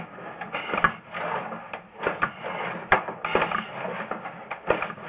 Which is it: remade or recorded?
recorded